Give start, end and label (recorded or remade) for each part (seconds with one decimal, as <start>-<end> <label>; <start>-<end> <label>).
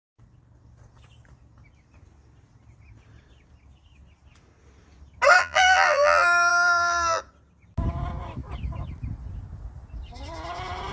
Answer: 0.0-5.4 recorded; 5.4-7.2 remade; 7.2-10.9 recorded